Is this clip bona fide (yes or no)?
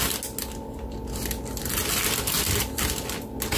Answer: yes